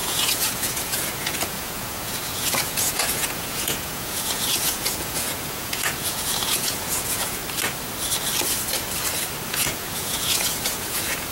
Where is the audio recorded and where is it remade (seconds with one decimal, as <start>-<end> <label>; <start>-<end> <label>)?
0.0-7.4 remade; 7.4-9.5 recorded; 9.5-11.3 remade

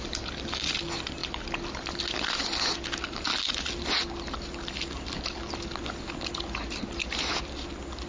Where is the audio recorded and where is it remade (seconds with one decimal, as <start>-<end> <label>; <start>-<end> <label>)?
0.0-8.1 recorded

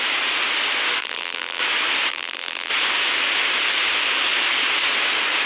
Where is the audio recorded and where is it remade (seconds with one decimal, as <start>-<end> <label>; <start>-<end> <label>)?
0.0-1.0 recorded; 1.0-1.6 remade; 1.6-2.1 recorded; 2.1-2.7 remade; 2.7-5.5 recorded

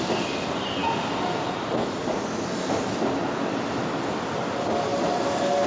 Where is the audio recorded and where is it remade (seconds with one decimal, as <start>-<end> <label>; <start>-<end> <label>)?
0.0-5.7 recorded

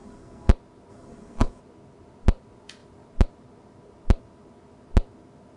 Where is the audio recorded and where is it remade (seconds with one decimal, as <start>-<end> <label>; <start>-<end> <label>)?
0.0-0.5 remade; 0.5-0.9 recorded; 0.9-1.6 remade; 1.6-5.6 recorded

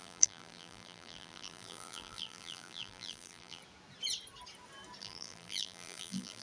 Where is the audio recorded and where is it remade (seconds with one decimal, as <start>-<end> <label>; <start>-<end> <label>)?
0.0-3.6 remade; 3.6-5.0 recorded; 5.0-6.4 remade

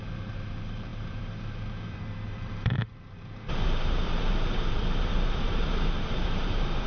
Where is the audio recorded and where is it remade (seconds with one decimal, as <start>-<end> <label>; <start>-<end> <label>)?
0.0-6.9 remade